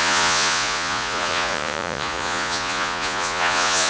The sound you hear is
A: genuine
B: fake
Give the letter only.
B